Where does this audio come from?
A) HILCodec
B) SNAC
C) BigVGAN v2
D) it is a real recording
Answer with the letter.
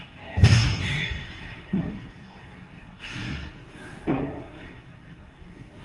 B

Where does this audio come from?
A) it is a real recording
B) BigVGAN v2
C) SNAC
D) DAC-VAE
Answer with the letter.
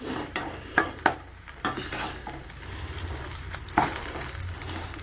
B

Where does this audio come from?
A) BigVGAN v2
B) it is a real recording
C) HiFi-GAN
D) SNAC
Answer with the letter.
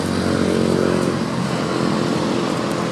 B